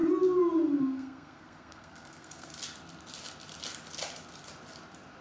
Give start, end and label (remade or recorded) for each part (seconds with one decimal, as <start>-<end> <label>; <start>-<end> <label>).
0.0-0.8 recorded; 0.8-2.5 remade; 2.5-5.2 recorded